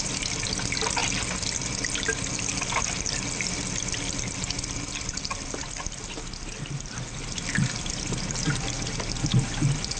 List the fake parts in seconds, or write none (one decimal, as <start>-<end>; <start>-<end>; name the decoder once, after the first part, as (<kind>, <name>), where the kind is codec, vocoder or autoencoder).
none